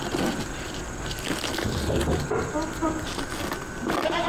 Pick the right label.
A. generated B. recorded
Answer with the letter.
B